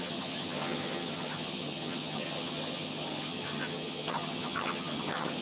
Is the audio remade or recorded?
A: remade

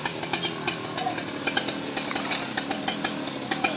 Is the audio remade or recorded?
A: recorded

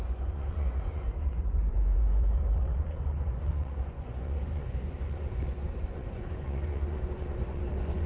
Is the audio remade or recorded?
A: remade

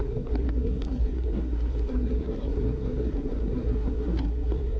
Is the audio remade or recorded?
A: remade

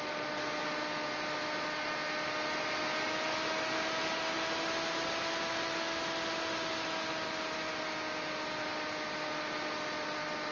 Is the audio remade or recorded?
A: recorded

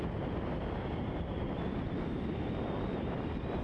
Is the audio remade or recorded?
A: recorded